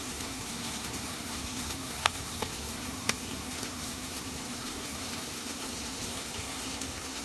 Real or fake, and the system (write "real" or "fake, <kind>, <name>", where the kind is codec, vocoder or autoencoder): fake, codec, SNAC